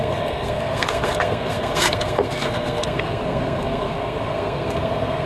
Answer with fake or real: fake